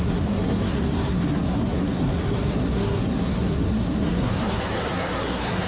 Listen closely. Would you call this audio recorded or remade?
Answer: remade